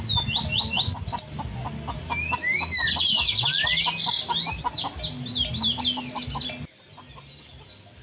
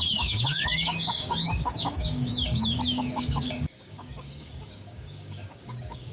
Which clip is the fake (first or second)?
second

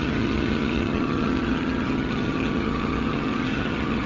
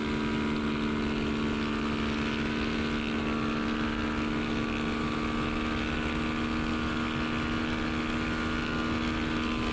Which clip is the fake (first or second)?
first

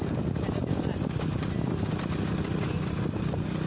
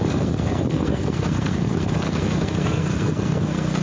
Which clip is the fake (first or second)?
second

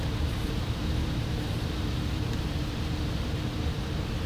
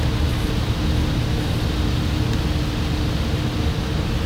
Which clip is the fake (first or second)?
first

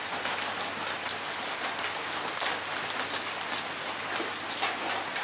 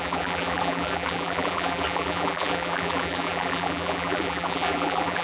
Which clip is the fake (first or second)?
second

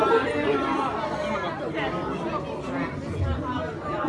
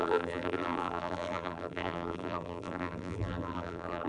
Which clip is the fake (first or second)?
second